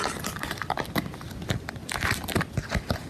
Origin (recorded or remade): recorded